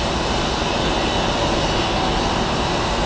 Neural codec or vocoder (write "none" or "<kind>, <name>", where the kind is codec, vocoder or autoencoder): none